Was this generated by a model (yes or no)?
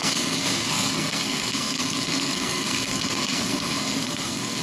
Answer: yes